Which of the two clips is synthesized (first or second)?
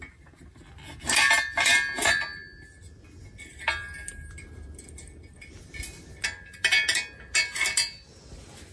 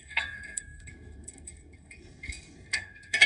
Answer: second